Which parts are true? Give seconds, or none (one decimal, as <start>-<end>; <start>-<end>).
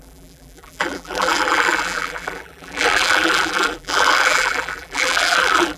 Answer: none